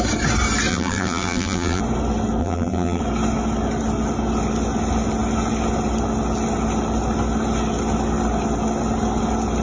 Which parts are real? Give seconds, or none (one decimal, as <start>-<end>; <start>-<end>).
0.0-0.7; 1.8-2.4; 3.0-9.6